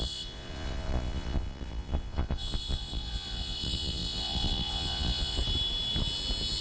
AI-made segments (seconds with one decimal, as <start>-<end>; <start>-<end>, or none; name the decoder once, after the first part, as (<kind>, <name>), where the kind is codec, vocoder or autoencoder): 0.0-5.4 (vocoder, Vocos)